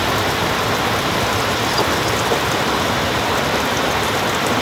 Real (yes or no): yes